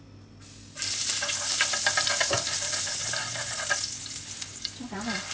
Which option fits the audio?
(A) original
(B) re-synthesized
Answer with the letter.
A